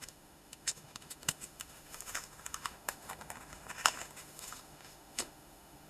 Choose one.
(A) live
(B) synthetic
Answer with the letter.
B